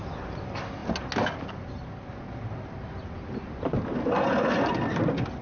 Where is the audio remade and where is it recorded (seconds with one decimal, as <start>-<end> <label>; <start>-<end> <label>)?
0.0-5.4 recorded